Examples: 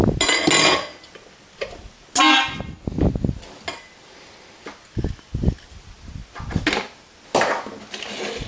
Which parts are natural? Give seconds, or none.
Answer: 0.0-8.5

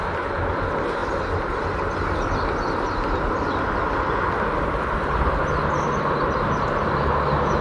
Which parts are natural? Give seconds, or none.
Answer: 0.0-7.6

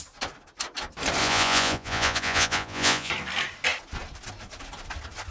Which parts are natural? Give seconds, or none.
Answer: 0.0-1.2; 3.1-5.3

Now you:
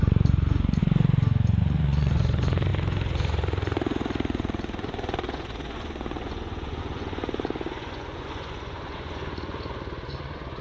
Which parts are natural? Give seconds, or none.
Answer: 0.8-1.6

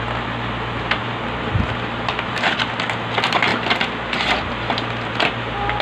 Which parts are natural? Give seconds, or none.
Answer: 0.0-5.8

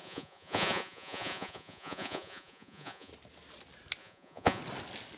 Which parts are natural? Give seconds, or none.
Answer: 3.1-4.0; 4.6-5.2

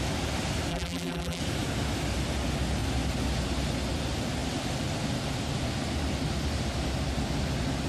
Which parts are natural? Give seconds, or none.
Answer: 0.0-0.7; 1.4-7.9